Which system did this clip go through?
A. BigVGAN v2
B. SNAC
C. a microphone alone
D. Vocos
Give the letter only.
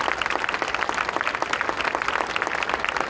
C